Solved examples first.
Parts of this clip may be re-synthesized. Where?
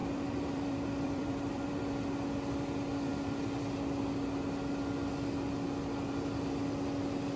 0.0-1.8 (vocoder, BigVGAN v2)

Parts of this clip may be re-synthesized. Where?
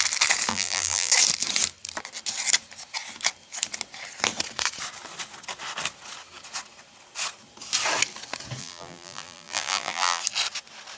0.5-1.1 (vocoder, BigVGAN v2); 8.6-10.2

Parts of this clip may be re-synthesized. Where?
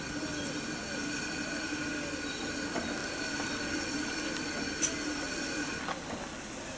3.0-5.7 (vocoder, BigVGAN v2)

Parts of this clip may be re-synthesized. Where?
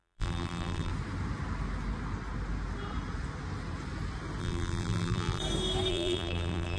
0.0-0.9 (vocoder, BigVGAN v2); 4.4-5.4; 5.9-6.8